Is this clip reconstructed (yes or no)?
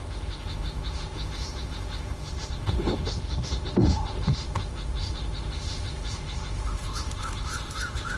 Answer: yes